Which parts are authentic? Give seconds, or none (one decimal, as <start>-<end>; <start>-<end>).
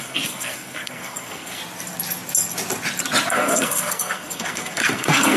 1.6-3.3